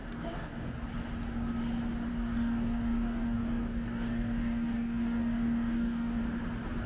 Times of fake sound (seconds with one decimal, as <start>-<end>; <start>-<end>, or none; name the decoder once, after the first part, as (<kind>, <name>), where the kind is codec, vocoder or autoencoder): 0.0-0.7 (codec, DAC); 2.1-6.2

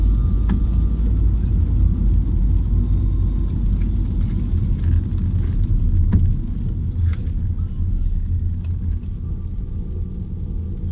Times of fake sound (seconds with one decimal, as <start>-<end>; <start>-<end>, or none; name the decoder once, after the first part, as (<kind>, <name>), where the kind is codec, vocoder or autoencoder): none

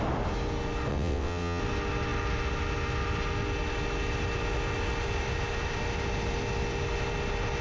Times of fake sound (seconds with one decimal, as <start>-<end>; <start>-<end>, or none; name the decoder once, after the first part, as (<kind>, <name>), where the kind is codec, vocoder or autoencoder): 0.9-1.6 (vocoder, WaveNeXt)

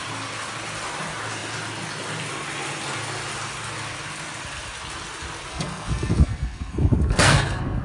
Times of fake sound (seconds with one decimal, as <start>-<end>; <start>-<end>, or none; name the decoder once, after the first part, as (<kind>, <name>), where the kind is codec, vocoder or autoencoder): 5.5-7.8 (codec, SNAC)

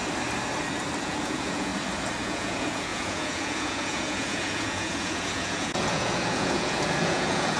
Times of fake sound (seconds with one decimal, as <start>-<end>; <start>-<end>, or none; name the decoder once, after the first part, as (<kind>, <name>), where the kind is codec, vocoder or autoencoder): 1.0-1.7 (vocoder, Vocos); 2.2-7.6

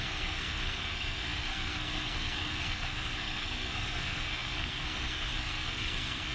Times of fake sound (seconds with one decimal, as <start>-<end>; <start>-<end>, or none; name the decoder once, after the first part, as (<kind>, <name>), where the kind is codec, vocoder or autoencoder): 0.0-6.3 (codec, SNAC)

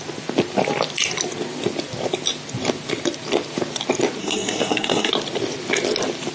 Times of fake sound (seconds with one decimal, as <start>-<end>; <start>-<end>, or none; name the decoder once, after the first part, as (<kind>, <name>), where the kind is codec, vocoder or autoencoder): 4.2-5.1 (codec, SNAC)

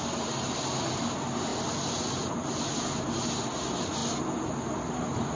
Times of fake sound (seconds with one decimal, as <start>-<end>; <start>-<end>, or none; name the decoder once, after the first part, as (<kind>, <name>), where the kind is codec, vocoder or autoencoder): none